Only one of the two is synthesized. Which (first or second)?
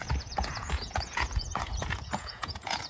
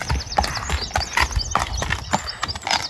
first